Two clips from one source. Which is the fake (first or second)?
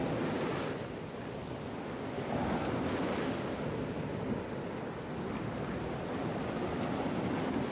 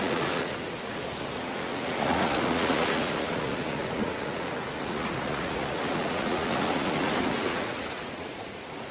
second